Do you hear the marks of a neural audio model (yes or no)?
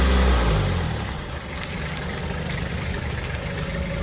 no